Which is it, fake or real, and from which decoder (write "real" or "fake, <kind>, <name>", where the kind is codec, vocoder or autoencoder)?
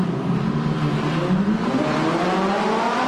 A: real